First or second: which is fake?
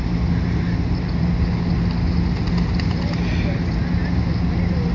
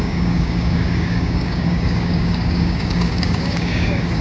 second